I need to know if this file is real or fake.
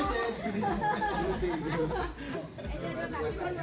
fake